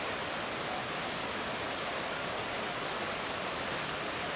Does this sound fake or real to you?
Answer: real